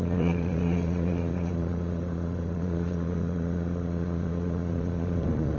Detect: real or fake fake